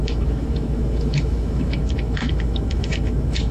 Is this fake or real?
fake